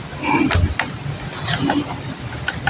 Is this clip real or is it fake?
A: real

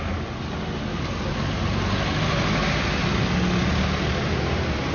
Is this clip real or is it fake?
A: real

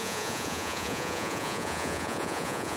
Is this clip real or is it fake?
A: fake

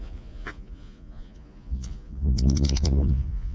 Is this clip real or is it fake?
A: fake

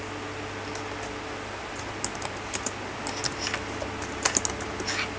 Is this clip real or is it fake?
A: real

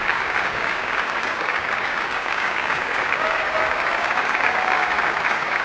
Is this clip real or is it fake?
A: fake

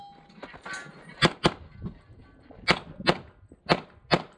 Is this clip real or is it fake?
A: real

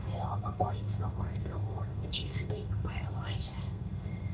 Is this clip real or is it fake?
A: fake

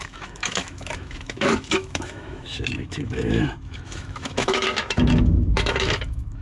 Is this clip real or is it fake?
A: fake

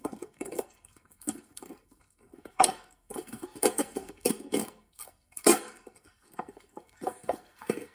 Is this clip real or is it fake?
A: fake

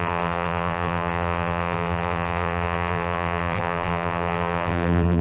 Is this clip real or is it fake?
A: fake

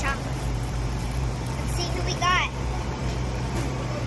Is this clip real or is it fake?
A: fake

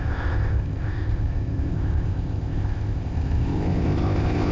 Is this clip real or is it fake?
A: fake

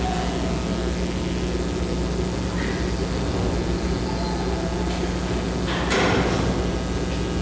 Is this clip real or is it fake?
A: real